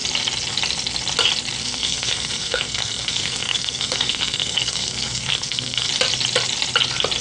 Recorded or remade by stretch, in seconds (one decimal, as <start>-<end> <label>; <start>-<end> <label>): 0.0-1.6 recorded; 1.6-5.9 remade; 5.9-7.2 recorded